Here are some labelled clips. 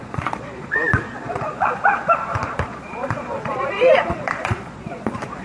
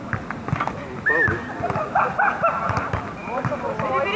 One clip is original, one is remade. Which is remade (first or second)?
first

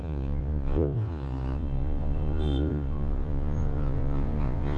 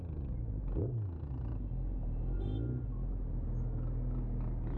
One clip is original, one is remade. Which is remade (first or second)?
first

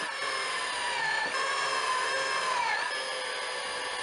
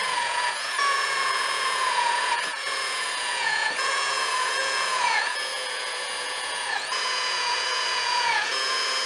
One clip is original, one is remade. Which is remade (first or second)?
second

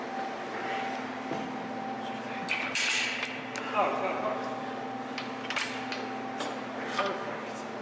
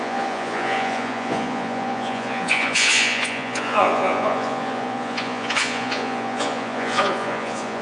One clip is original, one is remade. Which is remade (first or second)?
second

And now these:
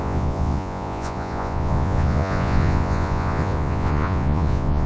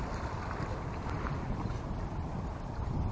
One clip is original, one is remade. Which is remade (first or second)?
first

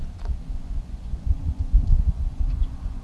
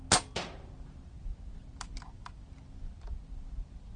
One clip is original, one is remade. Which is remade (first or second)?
first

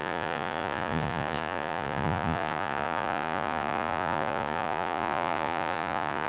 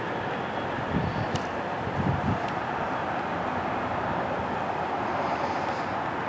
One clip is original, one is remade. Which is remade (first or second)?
first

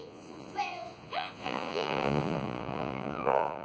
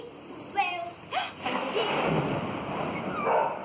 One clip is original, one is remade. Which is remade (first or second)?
first